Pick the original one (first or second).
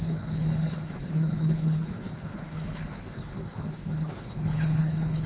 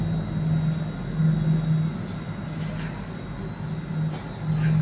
second